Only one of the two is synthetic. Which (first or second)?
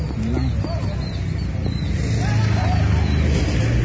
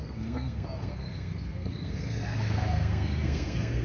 second